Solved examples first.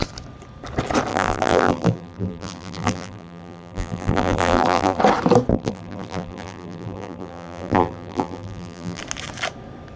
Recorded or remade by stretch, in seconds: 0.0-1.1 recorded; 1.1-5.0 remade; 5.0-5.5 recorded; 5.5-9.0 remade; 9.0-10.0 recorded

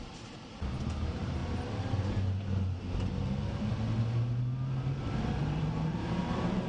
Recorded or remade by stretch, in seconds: 0.0-1.4 remade; 1.4-5.4 recorded; 5.4-6.7 remade